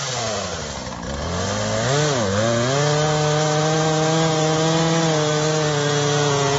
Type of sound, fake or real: real